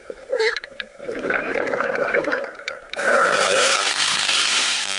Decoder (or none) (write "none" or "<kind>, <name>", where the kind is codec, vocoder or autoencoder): codec, SNAC